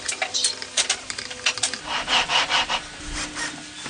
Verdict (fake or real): real